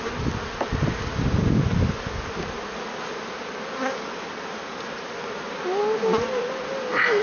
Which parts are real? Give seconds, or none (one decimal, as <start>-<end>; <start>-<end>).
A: 0.0-7.2